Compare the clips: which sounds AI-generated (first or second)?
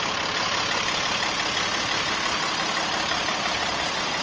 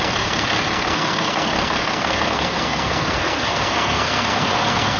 second